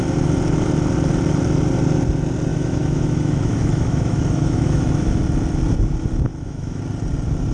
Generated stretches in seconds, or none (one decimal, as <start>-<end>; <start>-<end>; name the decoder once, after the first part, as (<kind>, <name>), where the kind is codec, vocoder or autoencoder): 2.5-5.2 (autoencoder, DAC-VAE); 6.3-6.8